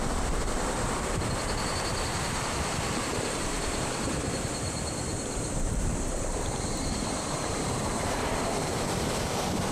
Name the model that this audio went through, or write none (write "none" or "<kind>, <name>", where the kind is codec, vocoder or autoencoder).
vocoder, BigVGAN v2